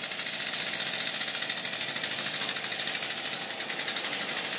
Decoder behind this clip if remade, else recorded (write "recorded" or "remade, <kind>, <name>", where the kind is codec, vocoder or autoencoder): recorded